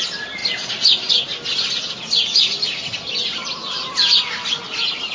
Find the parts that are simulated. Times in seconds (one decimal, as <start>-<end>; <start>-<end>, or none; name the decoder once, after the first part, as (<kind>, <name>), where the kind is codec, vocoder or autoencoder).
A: none